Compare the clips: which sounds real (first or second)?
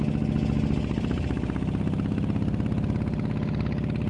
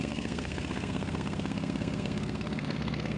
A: first